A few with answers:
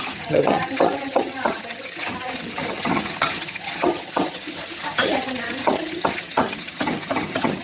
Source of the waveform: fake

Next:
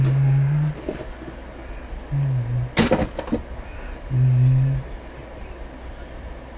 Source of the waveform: real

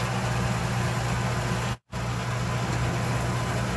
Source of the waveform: real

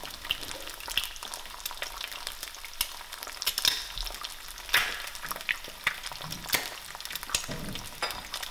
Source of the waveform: real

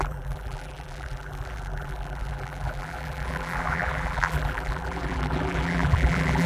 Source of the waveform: fake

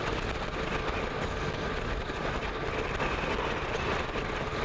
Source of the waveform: real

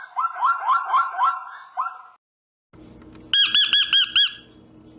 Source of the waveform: real